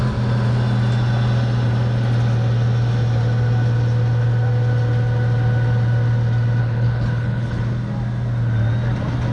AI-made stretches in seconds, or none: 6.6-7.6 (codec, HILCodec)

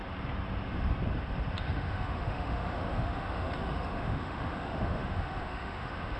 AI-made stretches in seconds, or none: 1.6-6.2 (autoencoder, DAC-VAE)